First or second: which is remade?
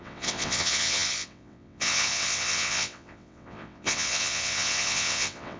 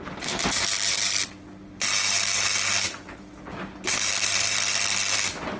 first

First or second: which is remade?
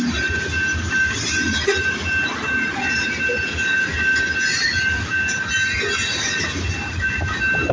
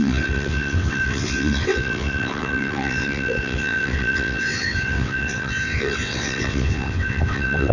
second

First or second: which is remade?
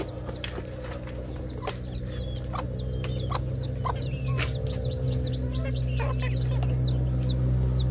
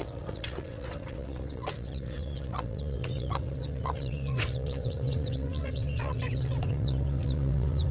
second